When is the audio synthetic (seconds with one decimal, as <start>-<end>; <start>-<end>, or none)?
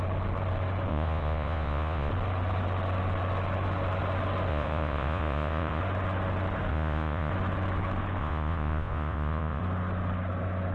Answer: 0.9-2.1; 4.5-5.8; 6.7-7.3; 8.2-9.6